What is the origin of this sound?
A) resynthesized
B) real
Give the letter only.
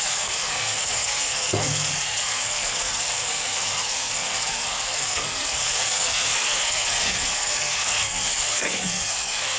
A